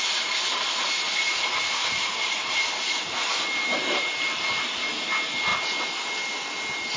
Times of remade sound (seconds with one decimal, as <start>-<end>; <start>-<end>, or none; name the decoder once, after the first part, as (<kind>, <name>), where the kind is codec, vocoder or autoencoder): 1.8-4.1 (vocoder, BigVGAN v2)